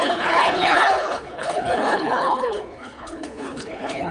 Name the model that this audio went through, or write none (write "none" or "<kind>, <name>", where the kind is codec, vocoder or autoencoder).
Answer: codec, HILCodec